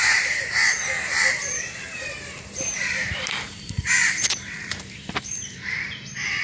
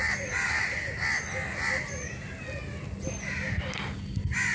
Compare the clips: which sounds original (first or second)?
second